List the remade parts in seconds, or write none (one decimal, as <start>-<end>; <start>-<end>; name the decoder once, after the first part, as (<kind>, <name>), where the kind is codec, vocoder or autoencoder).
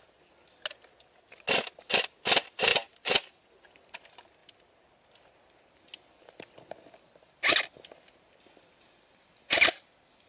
none